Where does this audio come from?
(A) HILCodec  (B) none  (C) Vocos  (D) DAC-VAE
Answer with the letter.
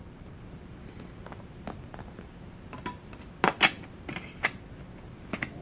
B